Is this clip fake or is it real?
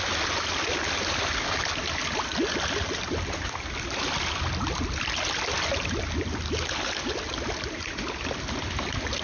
real